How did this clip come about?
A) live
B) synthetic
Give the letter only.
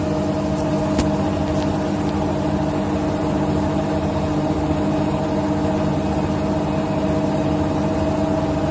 A